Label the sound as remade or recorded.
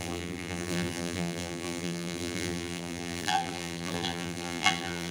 remade